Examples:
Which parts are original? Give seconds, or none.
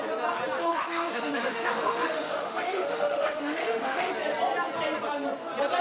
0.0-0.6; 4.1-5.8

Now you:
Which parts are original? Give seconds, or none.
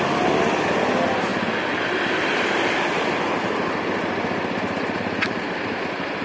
0.0-6.2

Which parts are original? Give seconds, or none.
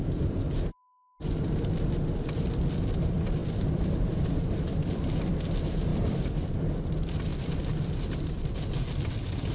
0.0-3.4; 5.0-5.9; 6.6-7.3; 9.1-9.5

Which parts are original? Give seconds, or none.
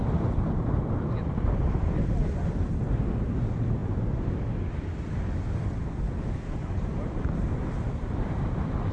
0.0-8.9